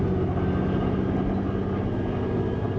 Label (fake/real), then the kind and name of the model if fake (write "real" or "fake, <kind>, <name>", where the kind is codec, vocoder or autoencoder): real